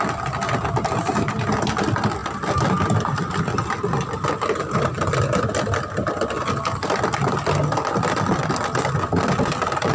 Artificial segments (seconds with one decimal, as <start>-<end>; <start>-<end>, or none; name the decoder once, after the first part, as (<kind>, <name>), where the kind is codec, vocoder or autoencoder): 2.2-4.3 (vocoder, BigVGAN v2)